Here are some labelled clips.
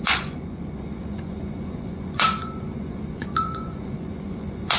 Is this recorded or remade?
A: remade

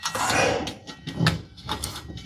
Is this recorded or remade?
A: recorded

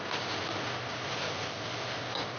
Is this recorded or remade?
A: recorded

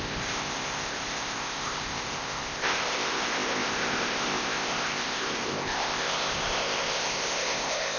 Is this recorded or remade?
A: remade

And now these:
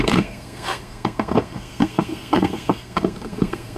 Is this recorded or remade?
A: remade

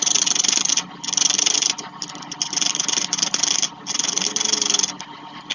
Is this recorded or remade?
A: recorded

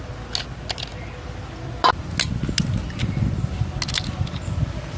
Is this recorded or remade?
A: recorded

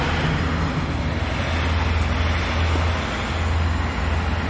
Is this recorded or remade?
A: recorded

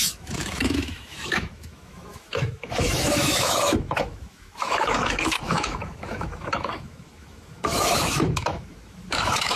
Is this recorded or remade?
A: remade